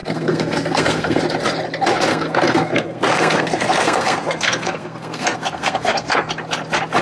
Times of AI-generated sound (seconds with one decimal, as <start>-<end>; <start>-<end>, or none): 0.0-1.2; 2.1-6.3